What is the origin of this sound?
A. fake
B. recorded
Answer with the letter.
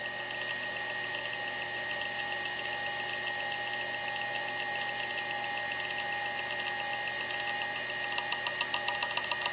B